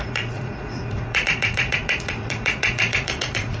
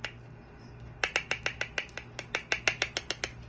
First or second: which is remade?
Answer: first